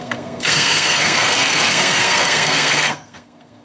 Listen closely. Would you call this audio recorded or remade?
remade